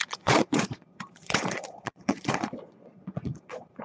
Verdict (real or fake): fake